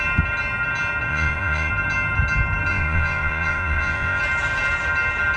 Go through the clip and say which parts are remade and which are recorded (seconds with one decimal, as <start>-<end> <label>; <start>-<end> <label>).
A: 0.0-1.1 recorded; 1.1-1.7 remade; 1.7-2.7 recorded; 2.7-4.2 remade; 4.2-5.4 recorded